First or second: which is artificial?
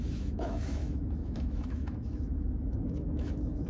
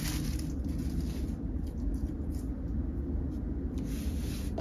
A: first